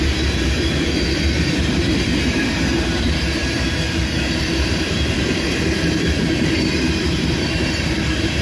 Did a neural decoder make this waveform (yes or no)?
yes